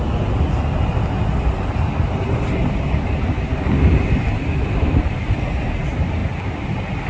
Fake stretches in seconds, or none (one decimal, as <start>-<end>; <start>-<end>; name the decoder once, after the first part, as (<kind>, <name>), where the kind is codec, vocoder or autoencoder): none